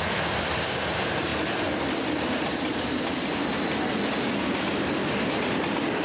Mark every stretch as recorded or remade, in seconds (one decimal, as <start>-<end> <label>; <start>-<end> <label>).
0.0-6.0 recorded